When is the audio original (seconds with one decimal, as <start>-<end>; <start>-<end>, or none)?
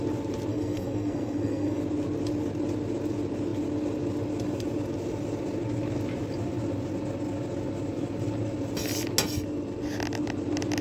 0.0-0.5; 1.8-10.8